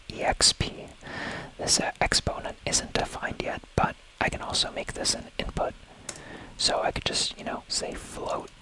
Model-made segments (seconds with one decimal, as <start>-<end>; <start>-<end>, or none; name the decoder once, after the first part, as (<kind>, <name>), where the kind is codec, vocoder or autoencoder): 3.0-4.7 (vocoder, BigVGAN v2); 6.8-7.3